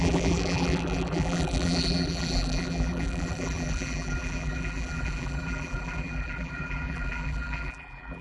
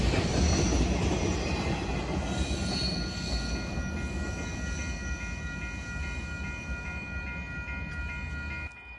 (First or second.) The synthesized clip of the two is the first